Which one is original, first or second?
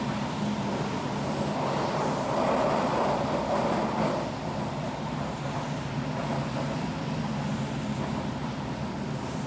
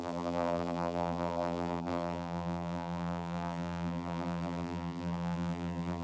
first